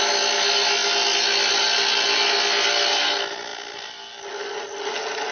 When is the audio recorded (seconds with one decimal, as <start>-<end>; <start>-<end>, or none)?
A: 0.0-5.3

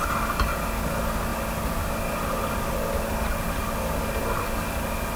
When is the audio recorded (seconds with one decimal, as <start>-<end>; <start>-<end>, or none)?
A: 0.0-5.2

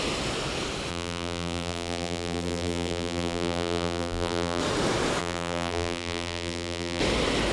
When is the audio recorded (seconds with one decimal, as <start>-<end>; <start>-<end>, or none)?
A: 0.0-0.9; 4.6-5.2; 7.0-7.5

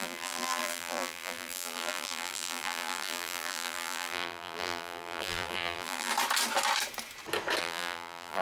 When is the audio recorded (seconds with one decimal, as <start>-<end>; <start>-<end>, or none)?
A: 6.1-7.6

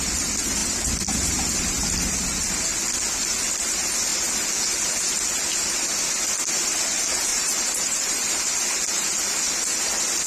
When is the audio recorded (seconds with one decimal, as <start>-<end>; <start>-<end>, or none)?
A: 0.0-7.3; 8.4-10.3

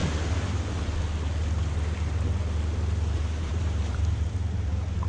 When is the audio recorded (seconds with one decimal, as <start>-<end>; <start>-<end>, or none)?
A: 0.0-3.1

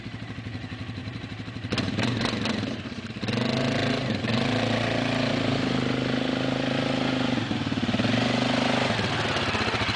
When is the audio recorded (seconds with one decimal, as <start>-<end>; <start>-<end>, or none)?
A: 0.0-1.0; 3.1-10.0